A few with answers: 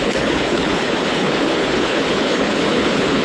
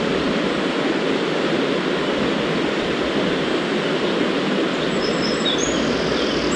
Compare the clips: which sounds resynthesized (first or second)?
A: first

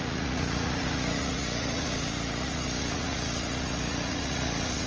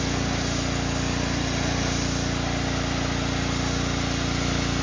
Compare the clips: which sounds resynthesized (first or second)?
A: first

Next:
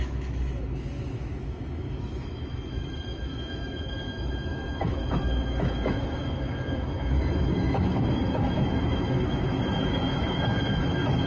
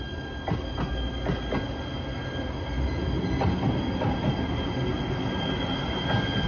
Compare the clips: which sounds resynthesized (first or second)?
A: first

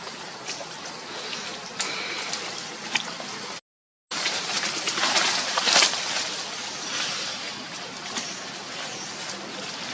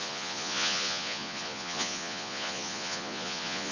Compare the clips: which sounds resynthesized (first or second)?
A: second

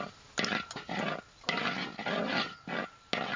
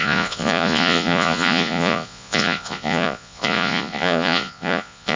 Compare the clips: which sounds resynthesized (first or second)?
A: second